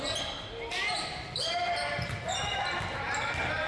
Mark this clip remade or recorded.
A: recorded